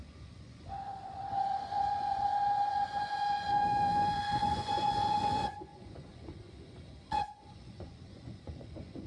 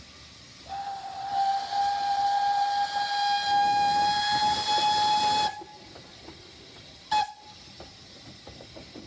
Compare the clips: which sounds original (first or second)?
second